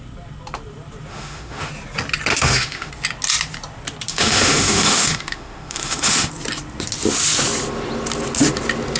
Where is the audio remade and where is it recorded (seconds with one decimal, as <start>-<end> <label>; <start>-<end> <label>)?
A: 0.0-1.1 recorded; 1.1-1.7 remade; 1.7-2.3 recorded; 2.3-2.9 remade; 2.9-4.1 recorded; 4.1-6.3 remade; 6.3-9.0 recorded